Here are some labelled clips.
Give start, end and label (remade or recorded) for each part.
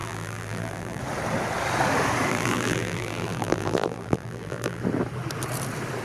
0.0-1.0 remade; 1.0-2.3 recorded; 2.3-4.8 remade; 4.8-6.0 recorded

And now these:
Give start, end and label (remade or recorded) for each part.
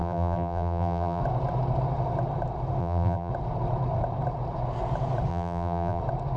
0.0-1.2 remade; 1.2-2.8 recorded; 2.8-3.3 remade; 3.3-5.3 recorded; 5.3-6.0 remade; 6.0-6.4 recorded